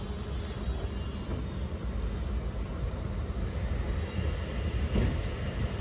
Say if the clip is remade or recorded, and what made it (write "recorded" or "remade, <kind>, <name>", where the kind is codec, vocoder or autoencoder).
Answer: recorded